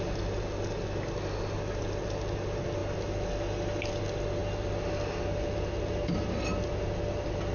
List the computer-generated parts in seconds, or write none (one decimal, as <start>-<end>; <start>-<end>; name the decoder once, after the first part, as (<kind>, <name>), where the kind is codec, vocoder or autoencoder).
none